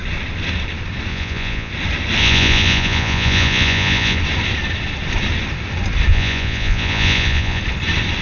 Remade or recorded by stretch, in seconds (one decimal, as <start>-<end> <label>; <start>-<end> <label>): 0.0-1.1 recorded; 1.1-1.7 remade; 1.7-2.2 recorded; 2.2-4.2 remade; 4.2-6.1 recorded; 6.1-7.6 remade; 7.6-8.2 recorded